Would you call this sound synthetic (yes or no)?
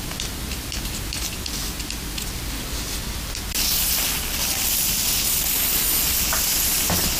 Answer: no